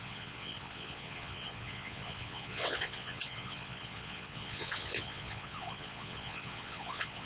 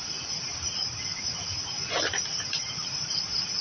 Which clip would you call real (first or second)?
second